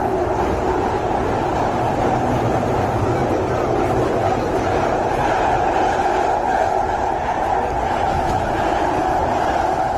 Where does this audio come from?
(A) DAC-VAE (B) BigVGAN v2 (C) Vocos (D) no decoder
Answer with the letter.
D